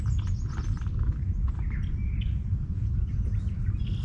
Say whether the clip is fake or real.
real